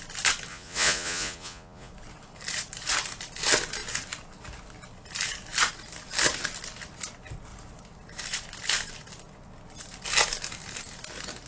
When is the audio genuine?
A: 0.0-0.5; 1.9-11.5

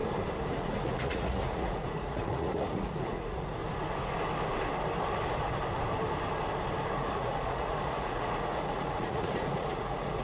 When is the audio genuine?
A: 0.0-0.5; 3.6-6.9

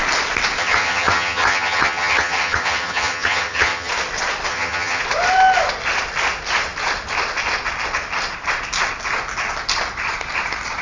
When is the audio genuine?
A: 0.0-0.6; 3.9-4.5; 5.0-10.8

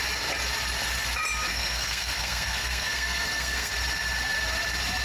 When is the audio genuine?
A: 0.0-1.5; 3.7-5.0

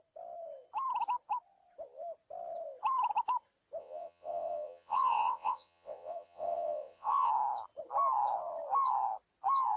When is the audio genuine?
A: 0.0-3.8; 7.3-9.8

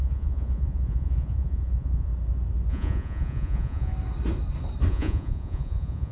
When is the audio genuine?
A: 2.1-2.7; 3.9-4.9

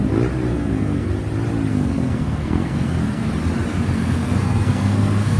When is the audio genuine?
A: 0.0-0.5; 1.1-1.7; 3.3-3.7

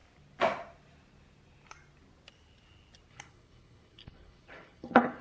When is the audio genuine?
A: 0.0-3.1